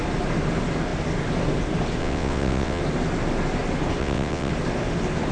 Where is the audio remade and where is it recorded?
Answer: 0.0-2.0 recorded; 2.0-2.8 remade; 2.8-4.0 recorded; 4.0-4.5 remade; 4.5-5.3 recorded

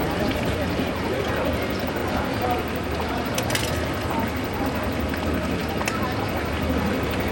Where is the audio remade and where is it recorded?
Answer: 0.0-7.3 recorded

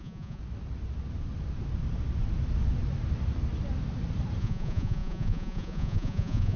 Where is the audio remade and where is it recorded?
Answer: 0.0-0.4 remade; 0.4-4.4 recorded; 4.4-6.6 remade

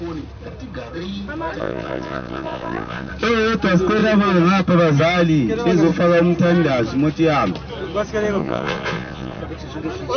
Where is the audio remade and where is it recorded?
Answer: 0.0-1.6 recorded; 1.6-3.1 remade; 3.1-8.4 recorded; 8.4-9.4 remade; 9.4-10.2 recorded

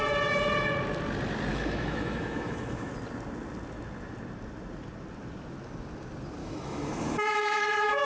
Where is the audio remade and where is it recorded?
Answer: 0.0-1.5 recorded; 1.5-2.9 remade; 2.9-6.4 recorded; 6.4-8.1 remade

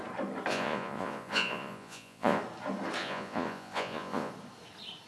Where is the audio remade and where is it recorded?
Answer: 0.0-0.5 recorded; 0.5-2.4 remade; 2.4-3.0 recorded; 3.0-4.3 remade; 4.3-5.1 recorded

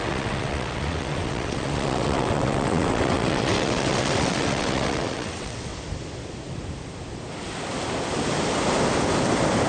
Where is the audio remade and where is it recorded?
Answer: 0.0-5.7 remade; 5.7-9.7 recorded